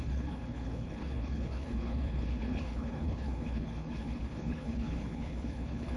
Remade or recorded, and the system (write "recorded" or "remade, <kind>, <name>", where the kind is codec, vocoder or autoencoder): remade, codec, HILCodec